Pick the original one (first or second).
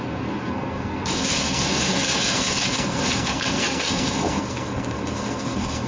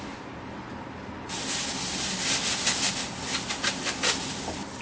second